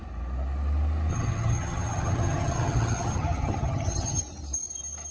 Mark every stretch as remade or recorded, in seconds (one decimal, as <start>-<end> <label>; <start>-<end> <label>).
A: 0.0-1.1 recorded; 1.1-4.2 remade; 4.2-5.1 recorded